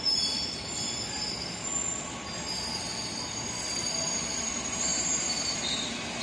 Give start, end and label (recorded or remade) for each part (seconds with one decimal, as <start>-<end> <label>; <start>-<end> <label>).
0.0-6.2 recorded